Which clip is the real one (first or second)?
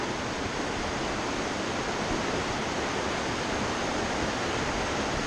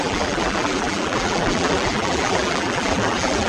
first